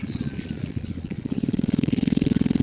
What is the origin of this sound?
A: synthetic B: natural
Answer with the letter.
A